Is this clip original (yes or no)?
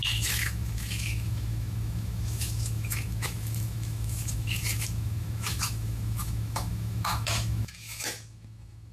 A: no